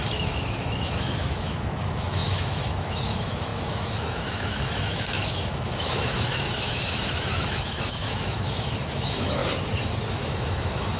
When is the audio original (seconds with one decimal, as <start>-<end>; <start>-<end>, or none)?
9.4-10.1